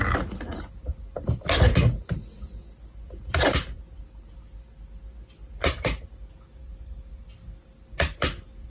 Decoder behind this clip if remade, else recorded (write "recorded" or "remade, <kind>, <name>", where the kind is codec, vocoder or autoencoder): recorded